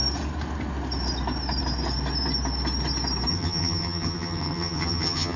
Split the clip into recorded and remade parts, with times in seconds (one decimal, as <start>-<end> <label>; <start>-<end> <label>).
0.0-3.3 recorded; 3.3-5.4 remade